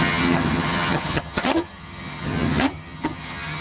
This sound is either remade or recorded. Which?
remade